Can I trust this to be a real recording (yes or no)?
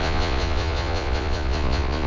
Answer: no